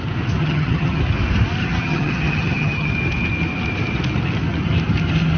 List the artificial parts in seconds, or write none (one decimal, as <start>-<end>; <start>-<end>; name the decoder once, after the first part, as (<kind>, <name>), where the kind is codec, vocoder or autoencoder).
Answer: 0.4-1.0 (vocoder, HiFi-GAN); 1.6-2.9